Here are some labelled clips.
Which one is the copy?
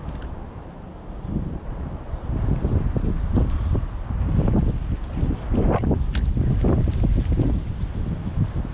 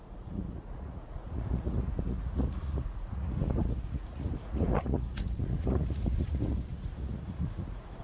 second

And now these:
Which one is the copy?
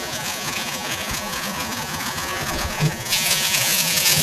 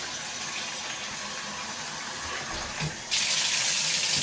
first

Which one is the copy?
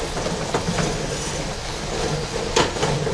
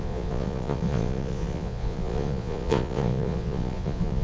second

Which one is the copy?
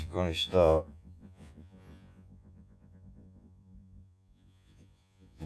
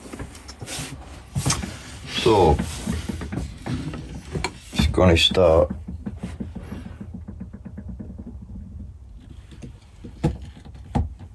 first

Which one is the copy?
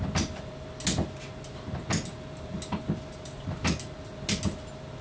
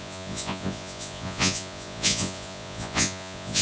second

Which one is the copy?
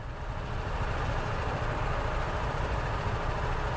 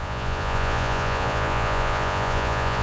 second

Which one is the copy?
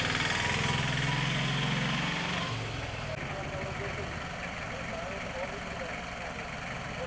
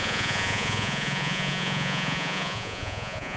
second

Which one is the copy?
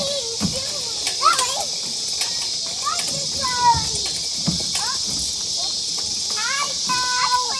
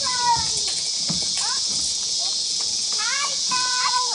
second